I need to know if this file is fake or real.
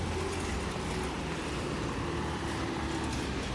fake